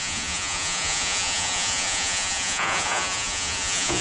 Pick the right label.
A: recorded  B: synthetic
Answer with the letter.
B